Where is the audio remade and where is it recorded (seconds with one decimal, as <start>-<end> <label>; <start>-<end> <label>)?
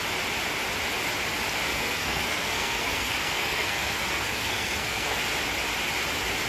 0.0-1.7 recorded; 1.7-5.2 remade; 5.2-6.5 recorded